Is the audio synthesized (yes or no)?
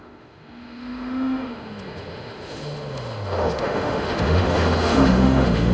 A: yes